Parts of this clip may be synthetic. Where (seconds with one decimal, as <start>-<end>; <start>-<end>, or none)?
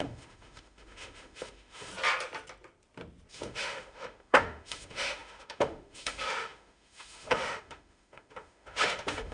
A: 0.0-1.9; 3.3-9.3